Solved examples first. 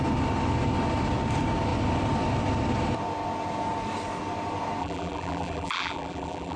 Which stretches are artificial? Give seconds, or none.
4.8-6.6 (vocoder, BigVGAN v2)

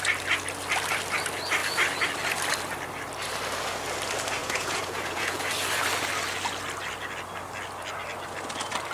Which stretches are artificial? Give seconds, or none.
4.4-5.5 (vocoder, Vocos)

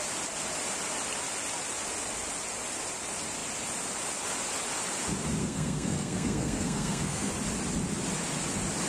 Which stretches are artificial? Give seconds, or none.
5.4-7.3 (codec, SNAC)

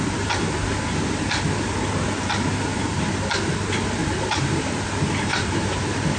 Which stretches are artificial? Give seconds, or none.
4.0-4.7 (vocoder, BigVGAN v2); 5.3-6.2

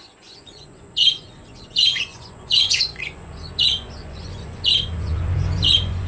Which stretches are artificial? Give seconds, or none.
0.0-6.1 (vocoder, Vocos)

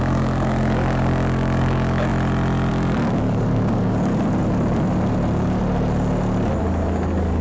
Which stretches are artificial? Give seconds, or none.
0.0-2.1 (codec, DAC); 2.7-4.1; 6.6-7.4